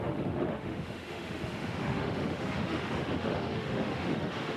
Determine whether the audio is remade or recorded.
remade